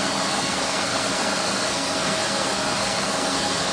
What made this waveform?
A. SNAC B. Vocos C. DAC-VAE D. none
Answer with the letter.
A